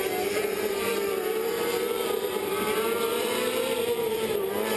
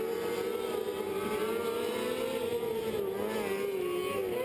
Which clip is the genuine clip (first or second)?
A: second